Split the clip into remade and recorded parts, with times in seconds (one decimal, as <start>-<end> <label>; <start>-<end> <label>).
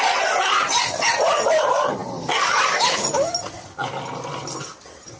0.0-5.2 recorded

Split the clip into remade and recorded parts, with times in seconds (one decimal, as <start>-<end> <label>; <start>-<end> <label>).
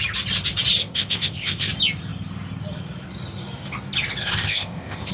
0.0-0.8 recorded; 0.8-1.7 remade; 1.7-4.2 recorded; 4.2-5.1 remade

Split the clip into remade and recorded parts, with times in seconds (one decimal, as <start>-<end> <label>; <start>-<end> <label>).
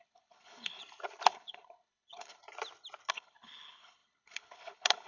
0.0-0.8 remade; 0.8-1.3 recorded; 1.3-2.4 remade; 2.4-3.1 recorded; 3.1-5.1 remade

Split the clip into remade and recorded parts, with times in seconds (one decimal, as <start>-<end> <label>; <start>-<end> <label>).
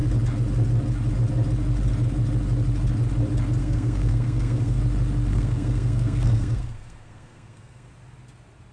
0.0-3.6 recorded; 3.6-4.8 remade; 4.8-5.3 recorded; 5.3-7.9 remade; 7.9-8.7 recorded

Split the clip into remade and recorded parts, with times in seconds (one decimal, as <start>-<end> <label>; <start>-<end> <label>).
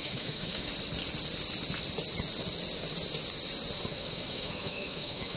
0.0-0.7 remade; 0.7-3.9 recorded; 3.9-5.4 remade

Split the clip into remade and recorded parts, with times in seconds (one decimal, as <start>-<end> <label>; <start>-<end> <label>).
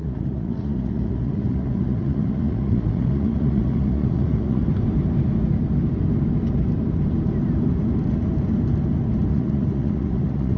0.0-4.6 remade; 4.6-9.3 recorded; 9.3-10.6 remade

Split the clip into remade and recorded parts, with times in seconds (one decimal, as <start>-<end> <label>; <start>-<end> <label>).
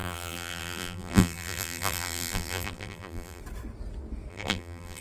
0.0-3.4 remade; 3.4-4.3 recorded; 4.3-5.0 remade